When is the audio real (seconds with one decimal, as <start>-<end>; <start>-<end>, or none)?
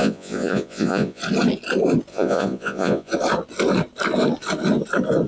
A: 1.2-2.1; 3.1-5.3